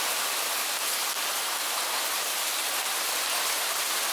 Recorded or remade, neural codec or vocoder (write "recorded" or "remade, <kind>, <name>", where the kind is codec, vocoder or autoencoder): recorded